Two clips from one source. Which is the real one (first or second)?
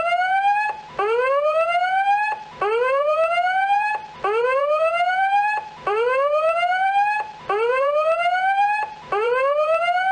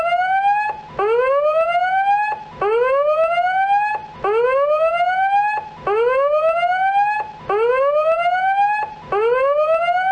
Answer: second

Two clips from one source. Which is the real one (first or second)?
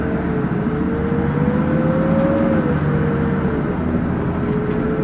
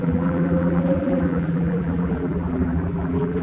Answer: first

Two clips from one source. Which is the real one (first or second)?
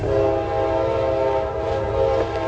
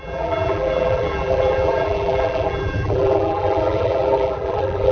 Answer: first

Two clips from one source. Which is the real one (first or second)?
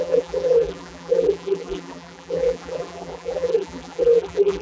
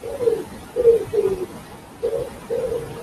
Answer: second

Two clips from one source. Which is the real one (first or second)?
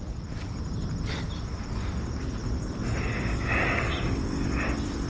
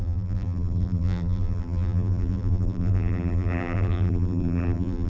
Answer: first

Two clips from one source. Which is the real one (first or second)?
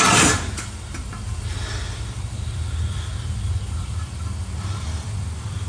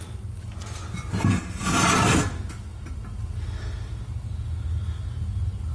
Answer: second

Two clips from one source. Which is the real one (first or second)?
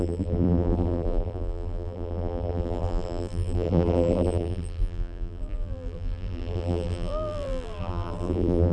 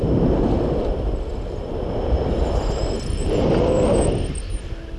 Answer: second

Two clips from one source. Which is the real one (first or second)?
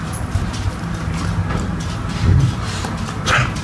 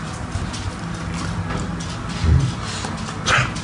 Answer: second